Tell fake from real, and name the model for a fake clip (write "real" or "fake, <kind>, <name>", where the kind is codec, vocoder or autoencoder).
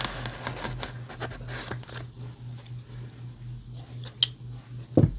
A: real